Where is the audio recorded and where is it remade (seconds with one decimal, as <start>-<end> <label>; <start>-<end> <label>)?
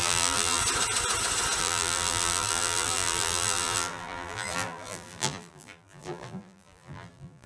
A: 0.0-0.6 remade; 0.6-1.6 recorded; 1.6-7.5 remade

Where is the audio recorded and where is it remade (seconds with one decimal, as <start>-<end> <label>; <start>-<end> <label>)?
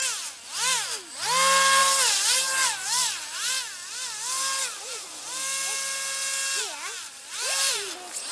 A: 0.0-8.3 recorded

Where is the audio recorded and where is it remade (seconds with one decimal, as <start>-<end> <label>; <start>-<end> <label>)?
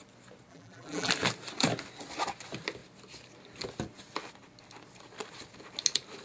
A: 0.0-0.5 recorded; 0.5-1.1 remade; 1.1-6.2 recorded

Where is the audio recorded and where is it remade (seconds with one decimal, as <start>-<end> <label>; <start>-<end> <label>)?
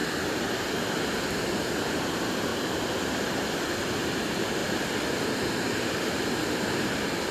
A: 0.0-1.1 recorded; 1.1-2.5 remade; 2.5-3.9 recorded; 3.9-4.6 remade; 4.6-5.4 recorded; 5.4-7.3 remade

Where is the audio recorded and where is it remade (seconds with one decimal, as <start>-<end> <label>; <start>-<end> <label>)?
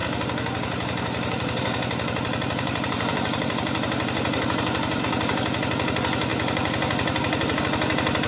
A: 0.0-5.0 remade; 5.0-6.3 recorded; 6.3-7.6 remade; 7.6-8.3 recorded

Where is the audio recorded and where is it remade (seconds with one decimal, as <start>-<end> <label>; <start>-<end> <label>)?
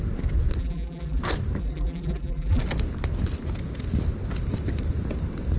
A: 0.0-0.6 recorded; 0.6-1.2 remade; 1.2-1.6 recorded; 1.6-2.6 remade; 2.6-5.6 recorded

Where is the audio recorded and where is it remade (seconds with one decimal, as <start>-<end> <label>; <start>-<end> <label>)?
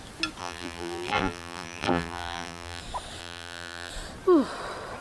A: 0.0-0.4 recorded; 0.4-2.8 remade; 2.8-3.2 recorded; 3.2-3.9 remade; 3.9-5.0 recorded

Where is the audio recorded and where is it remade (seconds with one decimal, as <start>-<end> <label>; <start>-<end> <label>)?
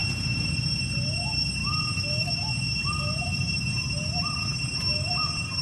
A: 0.0-1.2 remade; 1.2-1.6 recorded; 1.6-2.3 remade; 2.3-2.8 recorded; 2.8-5.6 remade